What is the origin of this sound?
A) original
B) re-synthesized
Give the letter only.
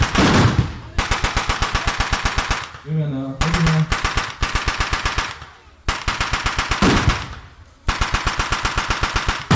A